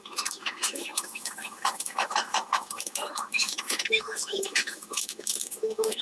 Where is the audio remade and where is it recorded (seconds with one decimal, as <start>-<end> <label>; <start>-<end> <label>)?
0.0-6.0 remade

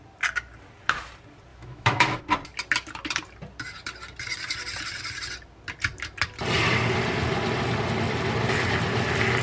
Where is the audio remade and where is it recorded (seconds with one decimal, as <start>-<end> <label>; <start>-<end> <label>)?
0.0-1.5 recorded; 1.5-2.2 remade; 2.2-9.4 recorded

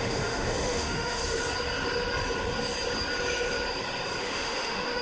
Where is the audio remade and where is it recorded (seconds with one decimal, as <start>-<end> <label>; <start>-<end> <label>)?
0.0-1.2 remade; 1.2-4.2 recorded; 4.2-5.0 remade

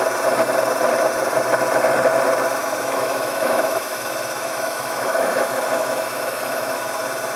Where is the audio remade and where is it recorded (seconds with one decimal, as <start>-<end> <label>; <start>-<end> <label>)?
0.0-2.6 recorded; 2.6-7.0 remade; 7.0-7.4 recorded

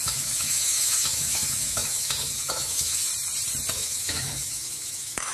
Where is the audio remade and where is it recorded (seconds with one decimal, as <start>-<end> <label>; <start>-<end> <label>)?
0.0-3.1 remade; 3.1-3.7 recorded; 3.7-5.3 remade